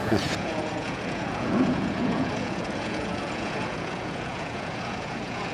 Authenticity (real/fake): fake